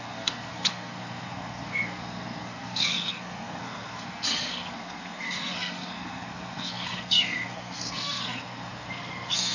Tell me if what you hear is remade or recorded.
remade